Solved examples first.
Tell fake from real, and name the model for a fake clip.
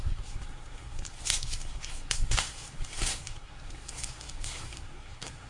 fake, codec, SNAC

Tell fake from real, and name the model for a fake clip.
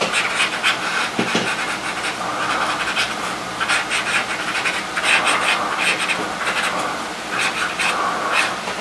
real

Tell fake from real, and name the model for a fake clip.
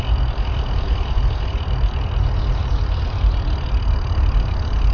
real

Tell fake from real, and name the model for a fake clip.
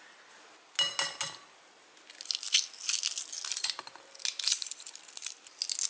real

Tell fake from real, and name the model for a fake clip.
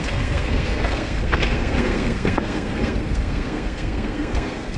fake, codec, SNAC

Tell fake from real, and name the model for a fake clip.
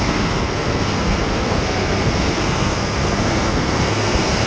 fake, codec, SNAC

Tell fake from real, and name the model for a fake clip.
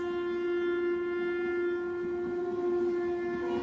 real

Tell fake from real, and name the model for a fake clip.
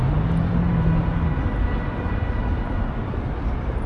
real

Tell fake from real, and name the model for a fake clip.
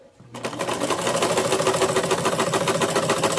real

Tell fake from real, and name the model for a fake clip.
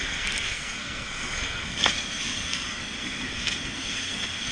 fake, codec, SNAC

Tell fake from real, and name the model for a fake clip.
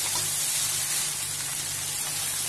real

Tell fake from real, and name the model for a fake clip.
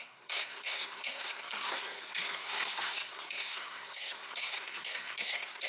fake, codec, SNAC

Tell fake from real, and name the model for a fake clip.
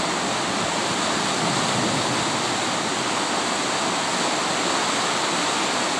real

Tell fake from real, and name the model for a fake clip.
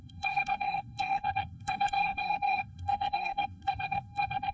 fake, codec, SNAC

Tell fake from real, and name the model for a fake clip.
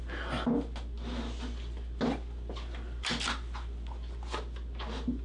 real